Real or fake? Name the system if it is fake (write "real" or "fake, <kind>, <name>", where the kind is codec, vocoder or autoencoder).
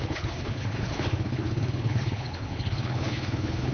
fake, codec, HILCodec